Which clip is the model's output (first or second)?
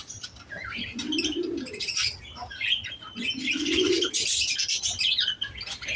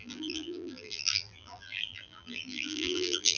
second